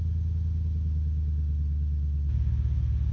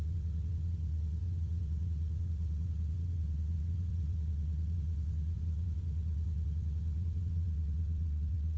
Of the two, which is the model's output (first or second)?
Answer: second